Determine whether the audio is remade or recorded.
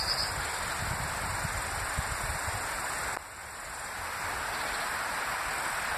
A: recorded